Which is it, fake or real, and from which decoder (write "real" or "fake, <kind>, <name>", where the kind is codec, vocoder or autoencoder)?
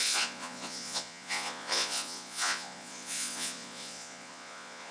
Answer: fake, vocoder, Vocos